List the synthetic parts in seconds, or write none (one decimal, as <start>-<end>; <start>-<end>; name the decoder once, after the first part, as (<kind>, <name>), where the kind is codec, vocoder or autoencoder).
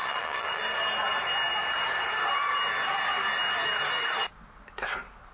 0.0-0.6 (vocoder, Vocos)